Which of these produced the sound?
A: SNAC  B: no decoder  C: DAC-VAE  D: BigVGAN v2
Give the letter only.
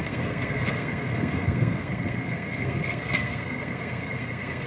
A